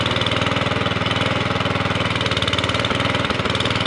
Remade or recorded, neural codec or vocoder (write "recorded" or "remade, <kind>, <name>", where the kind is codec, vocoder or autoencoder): recorded